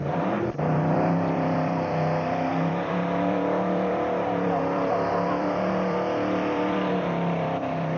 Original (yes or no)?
no